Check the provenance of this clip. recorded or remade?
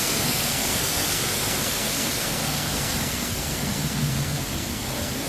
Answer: remade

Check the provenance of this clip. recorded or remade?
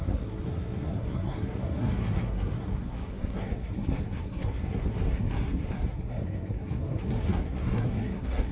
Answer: remade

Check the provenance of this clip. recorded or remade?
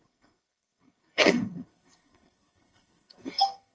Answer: remade